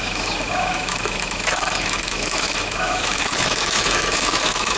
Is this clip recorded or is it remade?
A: remade